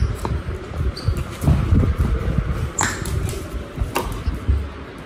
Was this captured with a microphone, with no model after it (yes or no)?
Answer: yes